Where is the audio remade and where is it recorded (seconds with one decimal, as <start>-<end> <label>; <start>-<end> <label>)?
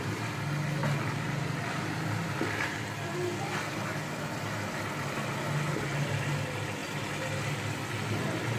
0.0-8.6 recorded